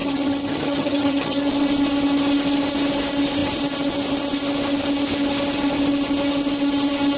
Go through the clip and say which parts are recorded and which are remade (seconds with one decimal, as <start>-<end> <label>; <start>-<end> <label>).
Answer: 0.0-1.5 remade; 1.5-7.2 recorded